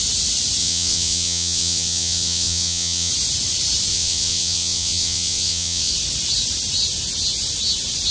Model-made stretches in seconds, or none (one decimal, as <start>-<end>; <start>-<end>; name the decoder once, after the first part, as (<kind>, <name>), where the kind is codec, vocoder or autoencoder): 0.6-3.1 (vocoder, WaveNeXt); 3.9-5.9